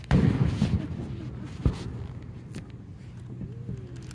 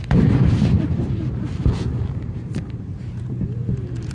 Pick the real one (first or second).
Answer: first